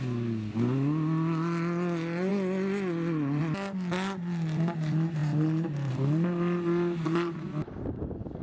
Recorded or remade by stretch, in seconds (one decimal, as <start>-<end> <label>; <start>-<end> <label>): 0.0-8.4 recorded